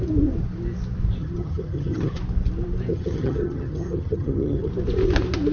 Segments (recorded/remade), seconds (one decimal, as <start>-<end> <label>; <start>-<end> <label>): 0.0-1.2 recorded; 1.2-2.2 remade; 2.2-2.9 recorded; 2.9-4.7 remade; 4.7-5.5 recorded